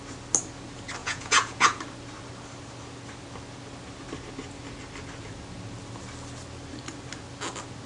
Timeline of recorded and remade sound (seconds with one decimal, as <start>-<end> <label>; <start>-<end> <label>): 0.0-1.0 recorded; 1.0-1.8 remade; 1.8-7.9 recorded